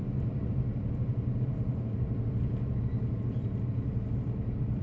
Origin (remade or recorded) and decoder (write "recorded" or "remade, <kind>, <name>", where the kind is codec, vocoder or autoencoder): remade, vocoder, BigVGAN v2